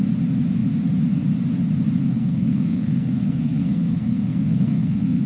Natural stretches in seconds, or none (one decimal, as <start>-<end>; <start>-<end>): 0.0-2.0